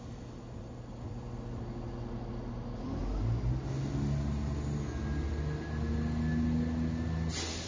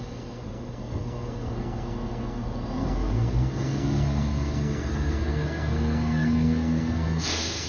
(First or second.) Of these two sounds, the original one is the first